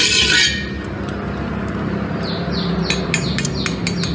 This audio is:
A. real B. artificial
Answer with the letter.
A